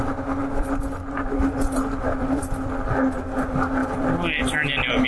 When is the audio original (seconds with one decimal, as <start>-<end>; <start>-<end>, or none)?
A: 0.0-0.4; 3.0-3.8